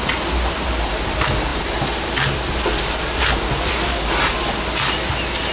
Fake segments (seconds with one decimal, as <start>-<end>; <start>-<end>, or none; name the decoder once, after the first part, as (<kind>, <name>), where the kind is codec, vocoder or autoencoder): none